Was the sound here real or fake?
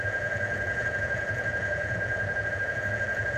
fake